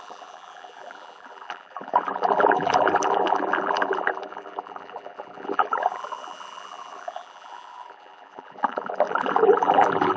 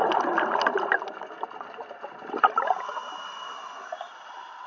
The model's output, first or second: first